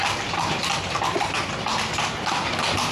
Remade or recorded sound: recorded